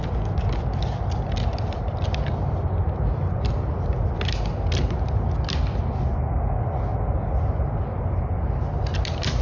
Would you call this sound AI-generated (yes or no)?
no